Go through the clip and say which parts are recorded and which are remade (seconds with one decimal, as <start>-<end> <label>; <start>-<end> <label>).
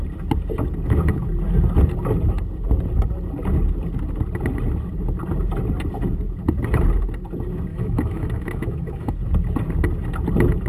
0.0-7.7 recorded; 7.7-9.1 remade; 9.1-10.7 recorded